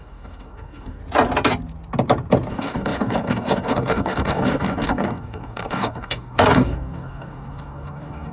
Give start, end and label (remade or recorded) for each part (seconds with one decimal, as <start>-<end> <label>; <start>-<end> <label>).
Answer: 0.0-1.0 remade; 1.0-2.5 recorded; 2.5-8.3 remade